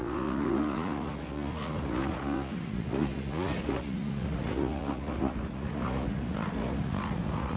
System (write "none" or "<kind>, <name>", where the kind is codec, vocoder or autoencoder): vocoder, Vocos